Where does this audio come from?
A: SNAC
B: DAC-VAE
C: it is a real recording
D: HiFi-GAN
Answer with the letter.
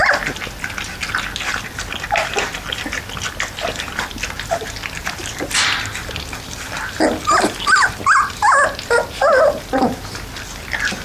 C